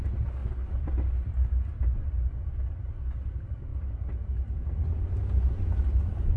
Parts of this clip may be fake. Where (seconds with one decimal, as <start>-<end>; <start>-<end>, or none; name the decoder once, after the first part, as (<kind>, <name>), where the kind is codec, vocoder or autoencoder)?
0.4-0.9 (vocoder, BigVGAN v2); 3.7-6.0